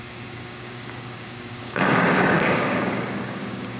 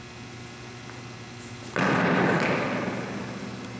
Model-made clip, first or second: first